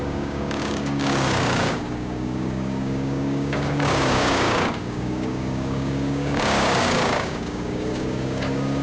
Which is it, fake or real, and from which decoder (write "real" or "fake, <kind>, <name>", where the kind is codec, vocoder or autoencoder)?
fake, codec, DAC